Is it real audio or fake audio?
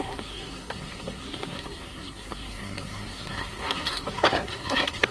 fake